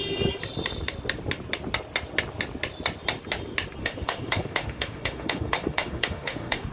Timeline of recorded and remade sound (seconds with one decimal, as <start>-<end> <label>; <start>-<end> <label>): 0.0-3.8 recorded; 3.8-6.7 remade